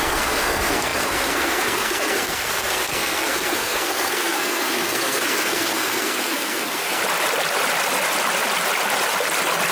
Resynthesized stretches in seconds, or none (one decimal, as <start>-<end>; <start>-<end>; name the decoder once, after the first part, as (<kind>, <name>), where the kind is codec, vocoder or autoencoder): 0.0-7.0 (codec, SNAC)

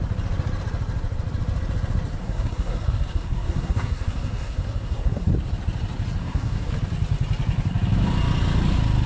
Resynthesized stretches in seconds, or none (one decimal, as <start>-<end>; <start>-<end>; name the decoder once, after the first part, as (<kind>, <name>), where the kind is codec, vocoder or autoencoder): 2.2-5.3 (codec, SNAC); 6.2-6.7

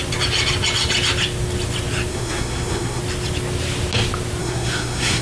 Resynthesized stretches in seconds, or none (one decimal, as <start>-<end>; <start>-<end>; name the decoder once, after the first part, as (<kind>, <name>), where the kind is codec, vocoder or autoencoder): 2.1-3.0 (codec, SNAC); 4.4-5.2

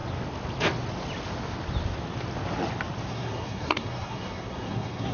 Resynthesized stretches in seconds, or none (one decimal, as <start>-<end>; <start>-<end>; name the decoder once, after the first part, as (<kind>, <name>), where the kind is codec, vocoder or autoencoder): 3.1-5.1 (codec, SNAC)